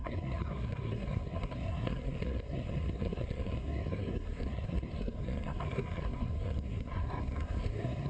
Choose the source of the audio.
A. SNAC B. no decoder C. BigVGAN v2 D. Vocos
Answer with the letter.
A